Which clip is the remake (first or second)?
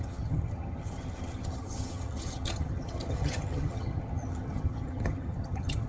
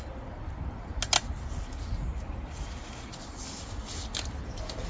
first